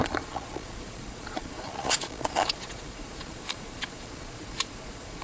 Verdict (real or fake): fake